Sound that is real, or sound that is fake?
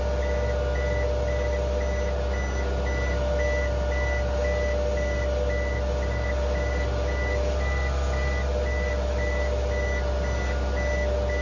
real